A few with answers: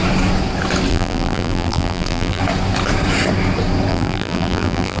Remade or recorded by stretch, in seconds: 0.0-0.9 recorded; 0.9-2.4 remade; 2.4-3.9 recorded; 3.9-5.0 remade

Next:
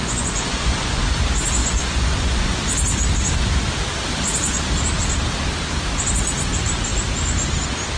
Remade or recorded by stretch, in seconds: 0.0-1.0 remade; 1.0-1.6 recorded; 1.6-2.6 remade; 2.6-8.0 recorded

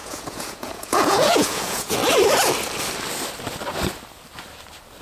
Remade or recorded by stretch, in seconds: 0.0-2.0 remade; 2.0-5.0 recorded

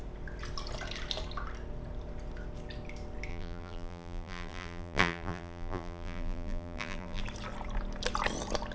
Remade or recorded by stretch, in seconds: 0.0-3.3 recorded; 3.3-7.2 remade; 7.2-8.7 recorded

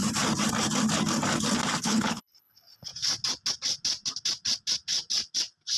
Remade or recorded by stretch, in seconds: 0.0-1.8 recorded; 1.8-2.9 remade; 2.9-5.8 recorded

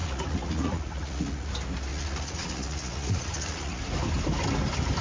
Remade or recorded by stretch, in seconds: 0.0-1.5 remade; 1.5-1.9 recorded; 1.9-3.8 remade; 3.8-5.0 recorded